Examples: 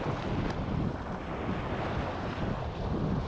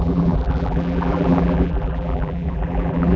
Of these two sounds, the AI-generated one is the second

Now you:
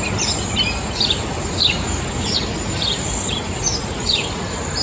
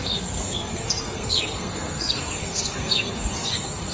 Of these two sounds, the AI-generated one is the second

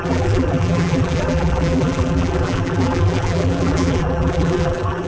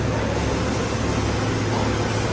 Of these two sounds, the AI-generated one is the first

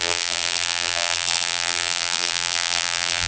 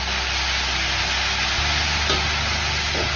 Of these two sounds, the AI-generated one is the first